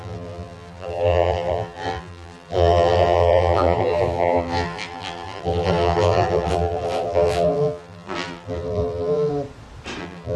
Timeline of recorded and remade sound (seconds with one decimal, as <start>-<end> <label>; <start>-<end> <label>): 0.0-9.3 remade; 9.3-10.0 recorded; 10.0-10.4 remade